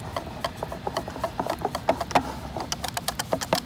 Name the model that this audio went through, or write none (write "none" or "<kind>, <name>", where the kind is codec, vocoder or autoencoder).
none